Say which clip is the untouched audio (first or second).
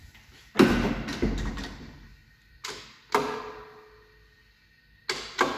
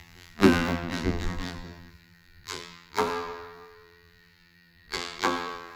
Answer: first